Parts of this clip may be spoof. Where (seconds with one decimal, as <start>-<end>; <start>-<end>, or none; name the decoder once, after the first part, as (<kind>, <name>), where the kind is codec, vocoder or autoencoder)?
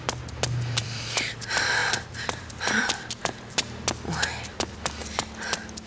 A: 0.8-1.3 (vocoder, BigVGAN v2); 1.8-2.9